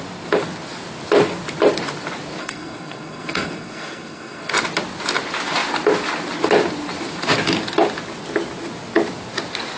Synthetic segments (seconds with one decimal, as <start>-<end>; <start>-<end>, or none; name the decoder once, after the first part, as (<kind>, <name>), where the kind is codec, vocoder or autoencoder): 2.4-4.5 (codec, SNAC)